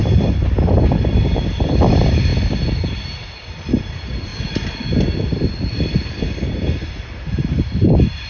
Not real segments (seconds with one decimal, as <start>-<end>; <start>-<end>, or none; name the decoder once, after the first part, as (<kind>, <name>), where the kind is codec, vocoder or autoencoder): 0.0-1.4 (vocoder, BigVGAN v2); 1.9-2.3; 3.8-4.3; 7.4-8.3